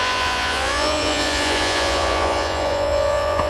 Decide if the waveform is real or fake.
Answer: fake